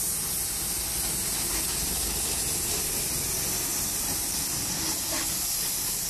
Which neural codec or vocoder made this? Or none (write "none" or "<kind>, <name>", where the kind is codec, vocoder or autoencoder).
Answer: none